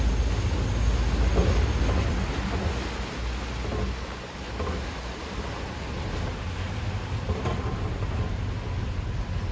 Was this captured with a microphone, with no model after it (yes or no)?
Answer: yes